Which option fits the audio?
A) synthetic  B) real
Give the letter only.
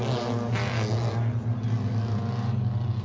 B